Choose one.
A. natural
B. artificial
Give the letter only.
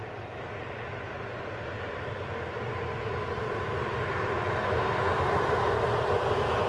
A